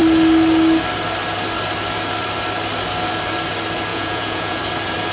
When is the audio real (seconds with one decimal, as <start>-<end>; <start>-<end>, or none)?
0.0-3.9; 4.6-5.1

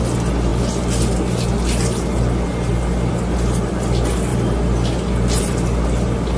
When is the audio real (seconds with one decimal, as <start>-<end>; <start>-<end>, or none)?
0.0-6.4

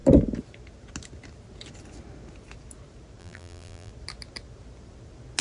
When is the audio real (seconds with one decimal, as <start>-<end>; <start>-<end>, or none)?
0.0-3.2; 3.9-5.4

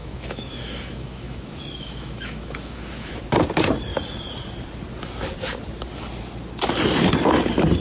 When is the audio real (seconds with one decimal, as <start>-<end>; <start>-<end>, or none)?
3.2-7.8

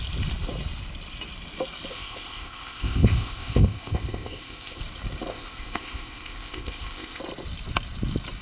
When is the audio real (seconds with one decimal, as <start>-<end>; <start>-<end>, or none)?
0.0-1.9; 4.8-5.3; 7.2-8.4